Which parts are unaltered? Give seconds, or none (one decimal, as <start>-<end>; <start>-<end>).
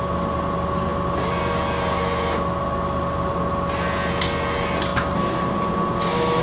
0.0-6.4